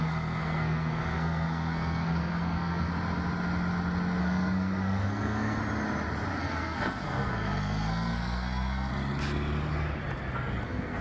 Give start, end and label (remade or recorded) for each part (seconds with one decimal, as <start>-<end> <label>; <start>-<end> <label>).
0.0-2.9 remade; 2.9-4.2 recorded; 4.2-5.6 remade; 5.6-6.4 recorded; 6.4-8.9 remade; 8.9-10.6 recorded; 10.6-11.0 remade